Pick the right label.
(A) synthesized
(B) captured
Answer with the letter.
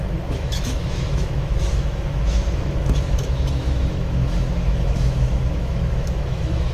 A